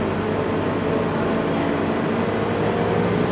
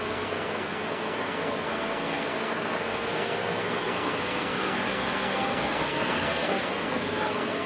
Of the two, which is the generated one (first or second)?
second